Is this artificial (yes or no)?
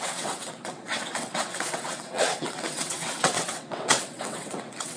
yes